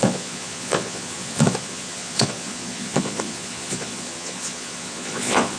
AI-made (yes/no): yes